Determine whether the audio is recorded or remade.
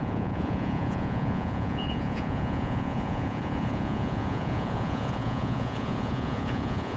remade